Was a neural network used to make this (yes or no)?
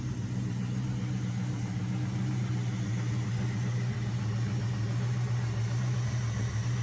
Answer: no